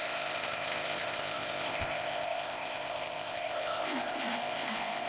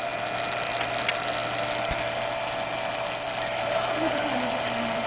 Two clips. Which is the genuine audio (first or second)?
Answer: second